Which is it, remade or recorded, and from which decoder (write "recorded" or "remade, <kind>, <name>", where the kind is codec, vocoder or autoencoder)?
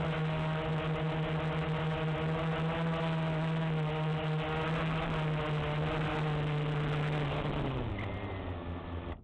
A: recorded